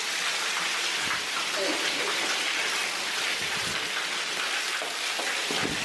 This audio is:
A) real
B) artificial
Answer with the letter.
B